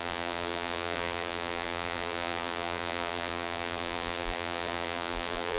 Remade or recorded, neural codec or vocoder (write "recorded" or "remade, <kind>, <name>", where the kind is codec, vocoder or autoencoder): remade, vocoder, BigVGAN v2